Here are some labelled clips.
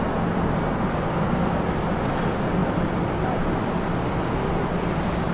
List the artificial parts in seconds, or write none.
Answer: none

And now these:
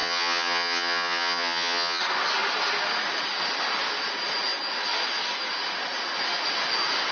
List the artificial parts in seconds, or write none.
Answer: 0.0-2.0 (vocoder, HiFi-GAN)

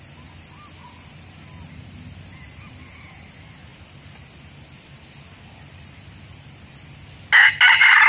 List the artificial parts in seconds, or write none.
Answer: none